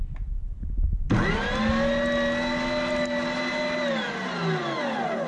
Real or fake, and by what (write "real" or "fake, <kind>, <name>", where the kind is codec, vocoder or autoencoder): real